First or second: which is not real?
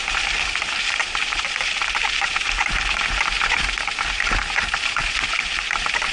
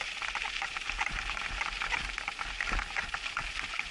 first